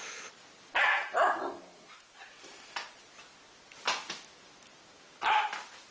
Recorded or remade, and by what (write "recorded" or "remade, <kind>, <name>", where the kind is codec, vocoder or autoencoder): recorded